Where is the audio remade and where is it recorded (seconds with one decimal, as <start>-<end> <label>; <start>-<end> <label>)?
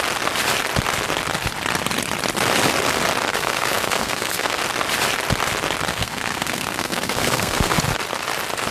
0.0-3.3 recorded; 3.3-4.6 remade; 4.6-5.9 recorded; 5.9-7.8 remade; 7.8-8.7 recorded